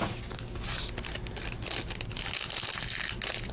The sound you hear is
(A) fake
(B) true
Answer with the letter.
B